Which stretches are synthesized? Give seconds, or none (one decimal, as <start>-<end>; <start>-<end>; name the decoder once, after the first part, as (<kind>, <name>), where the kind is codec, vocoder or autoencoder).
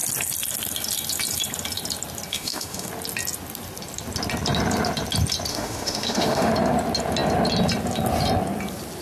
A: 2.3-2.9 (autoencoder, DAC-VAE); 5.5-6.5